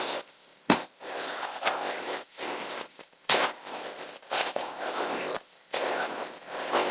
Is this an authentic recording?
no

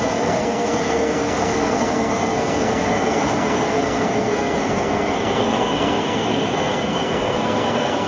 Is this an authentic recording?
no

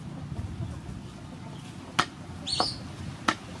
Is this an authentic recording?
yes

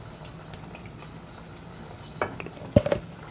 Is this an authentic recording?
yes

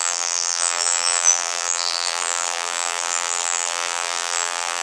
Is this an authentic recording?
no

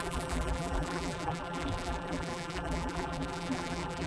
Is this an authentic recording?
no